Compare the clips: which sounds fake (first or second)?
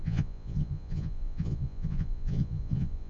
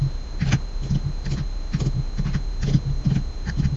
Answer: first